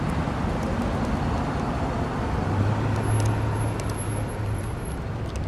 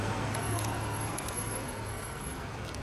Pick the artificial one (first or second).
second